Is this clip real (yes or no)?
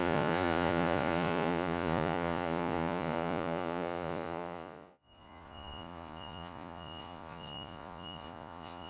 no